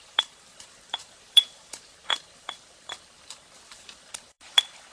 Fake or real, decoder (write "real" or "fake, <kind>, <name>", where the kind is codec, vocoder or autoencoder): fake, vocoder, BigVGAN v2